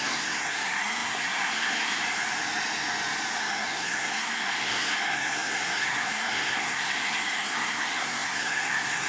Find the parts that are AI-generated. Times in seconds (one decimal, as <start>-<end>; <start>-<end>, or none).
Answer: 0.0-2.0; 3.4-9.1